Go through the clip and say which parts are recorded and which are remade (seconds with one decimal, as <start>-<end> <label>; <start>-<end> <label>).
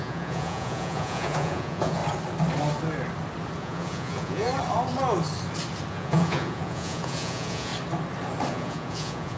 0.0-2.0 remade; 2.0-3.6 recorded; 3.6-4.5 remade; 4.5-5.9 recorded; 5.9-7.7 remade; 7.7-8.5 recorded; 8.5-9.4 remade